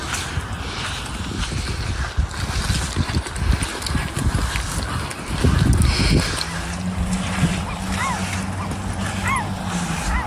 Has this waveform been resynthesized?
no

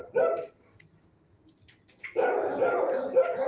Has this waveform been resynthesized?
no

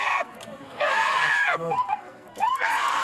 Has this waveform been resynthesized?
yes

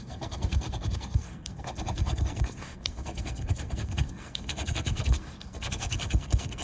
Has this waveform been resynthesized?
yes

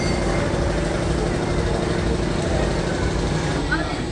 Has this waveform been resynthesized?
no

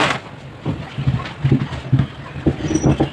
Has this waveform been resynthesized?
no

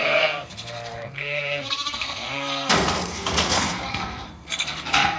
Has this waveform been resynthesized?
yes